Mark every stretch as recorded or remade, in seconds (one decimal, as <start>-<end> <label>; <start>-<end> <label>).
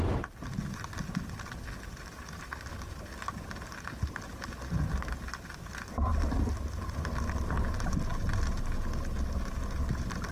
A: 0.0-10.3 recorded